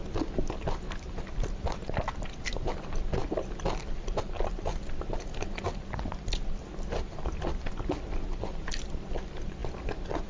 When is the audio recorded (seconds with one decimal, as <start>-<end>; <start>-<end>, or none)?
0.0-10.3